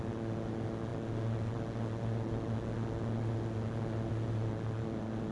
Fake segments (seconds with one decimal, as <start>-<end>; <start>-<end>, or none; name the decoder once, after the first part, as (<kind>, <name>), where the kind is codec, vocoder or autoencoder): none